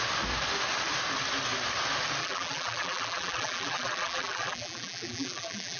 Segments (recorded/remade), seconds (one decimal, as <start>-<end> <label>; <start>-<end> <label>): 0.0-2.2 recorded; 2.2-5.8 remade